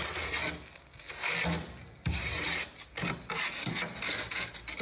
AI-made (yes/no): no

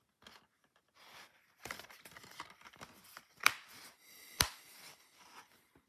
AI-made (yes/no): no